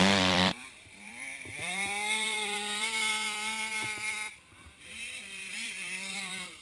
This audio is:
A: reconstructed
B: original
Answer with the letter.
A